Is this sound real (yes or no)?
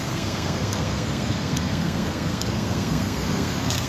no